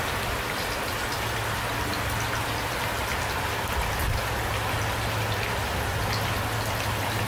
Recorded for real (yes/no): yes